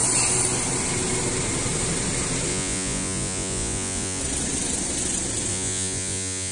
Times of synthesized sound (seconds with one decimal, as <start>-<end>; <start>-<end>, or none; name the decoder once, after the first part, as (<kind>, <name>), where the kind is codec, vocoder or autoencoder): 2.5-4.2 (vocoder, Vocos); 5.5-6.5